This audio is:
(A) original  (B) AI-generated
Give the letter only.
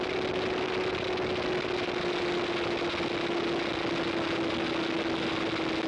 A